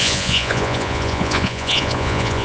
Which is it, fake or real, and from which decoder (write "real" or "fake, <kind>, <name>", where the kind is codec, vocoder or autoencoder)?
fake, vocoder, Vocos